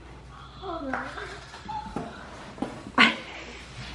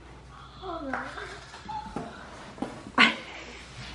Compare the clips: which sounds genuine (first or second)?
second